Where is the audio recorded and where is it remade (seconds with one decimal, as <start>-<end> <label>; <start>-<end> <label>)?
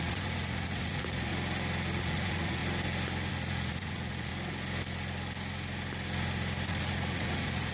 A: 0.0-1.3 remade; 1.3-2.0 recorded; 2.0-2.6 remade; 2.6-3.3 recorded; 3.3-4.3 remade; 4.3-6.7 recorded; 6.7-7.7 remade